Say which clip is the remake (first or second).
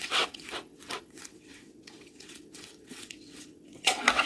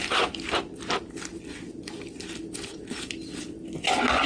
first